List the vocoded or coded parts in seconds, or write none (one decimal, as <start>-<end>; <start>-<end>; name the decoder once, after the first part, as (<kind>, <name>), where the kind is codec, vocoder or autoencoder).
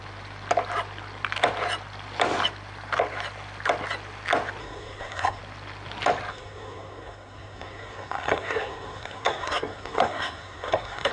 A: 4.6-5.4 (codec, SNAC); 6.3-11.1